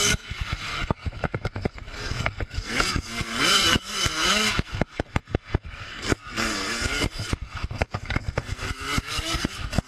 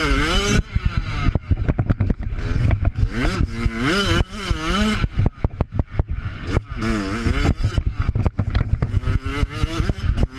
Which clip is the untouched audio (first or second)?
second